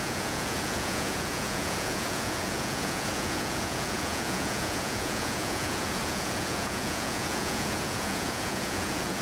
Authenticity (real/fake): fake